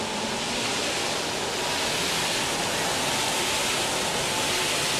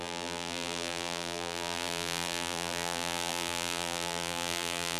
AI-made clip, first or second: second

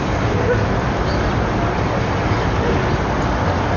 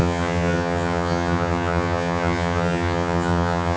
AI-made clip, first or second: second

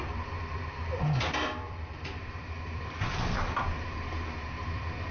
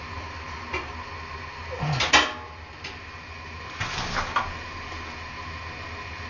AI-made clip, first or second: first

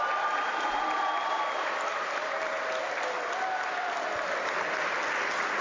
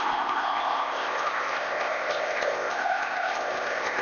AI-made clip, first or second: second